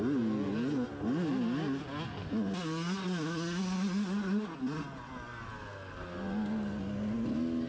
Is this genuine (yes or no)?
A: yes